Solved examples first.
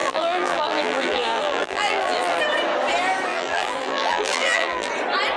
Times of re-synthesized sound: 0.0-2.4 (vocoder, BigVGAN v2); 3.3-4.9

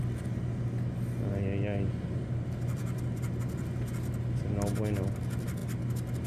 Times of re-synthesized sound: none

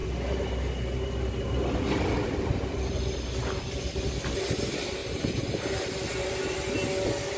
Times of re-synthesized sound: 5.0-5.8 (vocoder, BigVGAN v2)

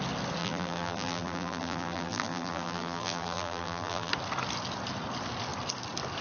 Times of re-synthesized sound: 0.4-4.1 (vocoder, BigVGAN v2)

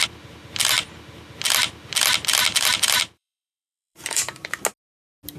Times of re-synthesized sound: 2.5-4.6 (vocoder, BigVGAN v2)

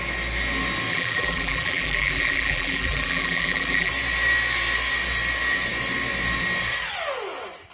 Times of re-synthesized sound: 0.9-3.9 (vocoder, BigVGAN v2)

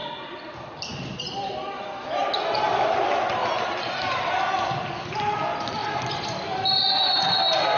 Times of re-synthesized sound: 3.4-4.2 (vocoder, BigVGAN v2); 5.8-7.3

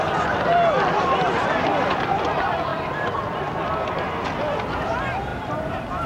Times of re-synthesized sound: 2.7-3.2 (vocoder, BigVGAN v2); 5.3-6.1